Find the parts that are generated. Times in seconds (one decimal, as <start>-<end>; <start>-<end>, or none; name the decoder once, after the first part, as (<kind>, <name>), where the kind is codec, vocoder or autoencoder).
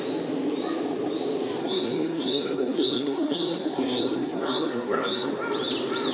1.6-5.3 (codec, SNAC)